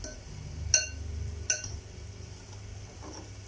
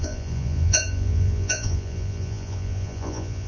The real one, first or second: first